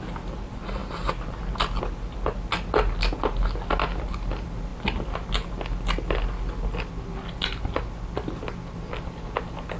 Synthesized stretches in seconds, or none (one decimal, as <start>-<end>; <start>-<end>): none